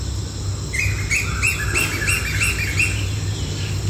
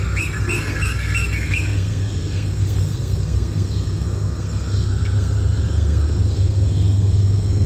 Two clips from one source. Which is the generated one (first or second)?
second